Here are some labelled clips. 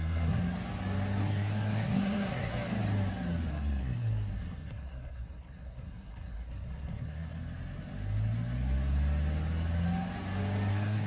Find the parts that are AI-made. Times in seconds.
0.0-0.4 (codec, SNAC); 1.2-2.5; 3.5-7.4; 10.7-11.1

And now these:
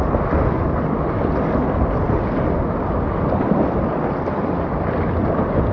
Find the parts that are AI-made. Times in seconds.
none

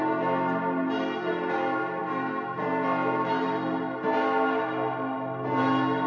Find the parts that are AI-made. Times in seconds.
none

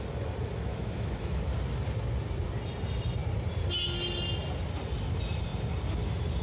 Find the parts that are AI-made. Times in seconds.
0.7-1.4 (autoencoder, DAC-VAE)

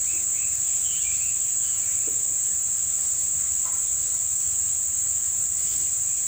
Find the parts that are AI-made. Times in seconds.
none

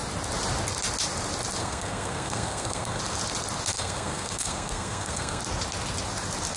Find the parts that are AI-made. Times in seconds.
1.6-3.0 (codec, SNAC); 3.7-5.4